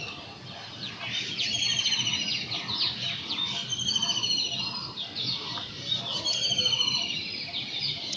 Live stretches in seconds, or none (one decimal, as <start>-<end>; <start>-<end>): 0.0-8.2

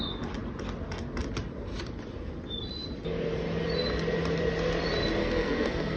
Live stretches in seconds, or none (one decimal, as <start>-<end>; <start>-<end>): 0.0-5.2

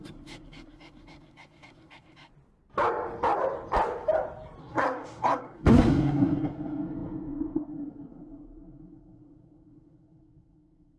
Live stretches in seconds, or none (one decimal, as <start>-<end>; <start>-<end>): 2.3-4.6

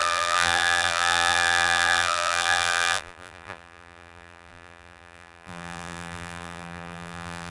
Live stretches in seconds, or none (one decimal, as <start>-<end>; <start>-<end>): none

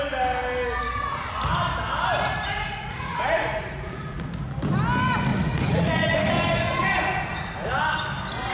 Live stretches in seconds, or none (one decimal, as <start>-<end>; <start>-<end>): 0.0-2.5; 4.3-5.3; 7.8-8.5

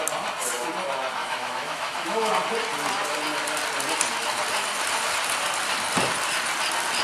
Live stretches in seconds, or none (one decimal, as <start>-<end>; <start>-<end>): 0.0-1.2; 2.3-7.0

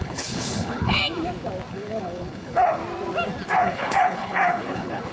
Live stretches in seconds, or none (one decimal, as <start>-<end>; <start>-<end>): 1.0-1.7; 2.8-3.6

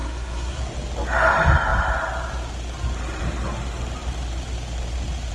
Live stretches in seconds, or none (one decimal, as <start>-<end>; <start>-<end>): 0.6-5.3